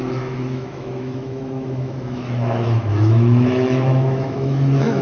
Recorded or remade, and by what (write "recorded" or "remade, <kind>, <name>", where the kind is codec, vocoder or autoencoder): remade, autoencoder, DAC-VAE